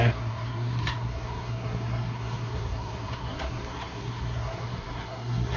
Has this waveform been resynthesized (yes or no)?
yes